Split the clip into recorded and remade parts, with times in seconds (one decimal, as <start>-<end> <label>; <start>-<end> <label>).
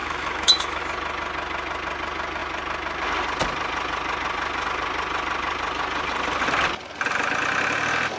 0.0-0.8 remade; 0.8-8.2 recorded